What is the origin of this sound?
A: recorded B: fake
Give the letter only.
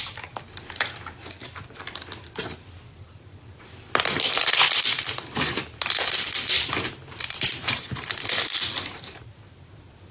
B